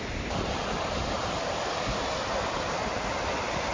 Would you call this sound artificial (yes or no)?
no